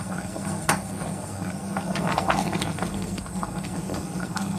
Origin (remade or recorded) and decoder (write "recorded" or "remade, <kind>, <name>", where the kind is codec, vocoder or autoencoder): remade, codec, SNAC